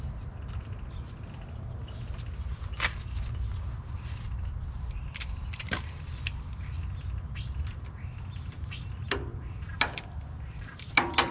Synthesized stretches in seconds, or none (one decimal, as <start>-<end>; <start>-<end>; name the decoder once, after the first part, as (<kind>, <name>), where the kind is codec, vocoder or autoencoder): none